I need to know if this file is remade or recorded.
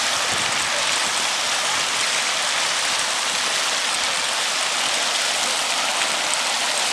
recorded